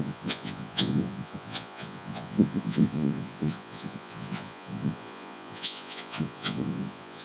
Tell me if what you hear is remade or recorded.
remade